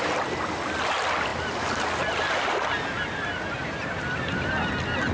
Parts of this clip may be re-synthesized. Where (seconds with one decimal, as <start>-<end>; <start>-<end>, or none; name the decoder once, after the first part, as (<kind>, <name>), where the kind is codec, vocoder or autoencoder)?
none